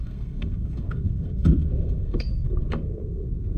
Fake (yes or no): yes